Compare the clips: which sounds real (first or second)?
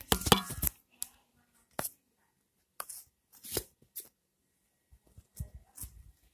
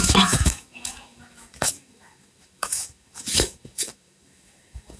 first